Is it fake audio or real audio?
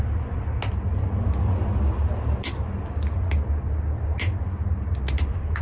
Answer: real